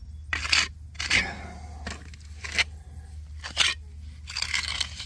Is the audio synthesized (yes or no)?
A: no